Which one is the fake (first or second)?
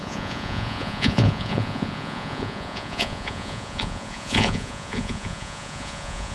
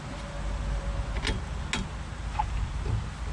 first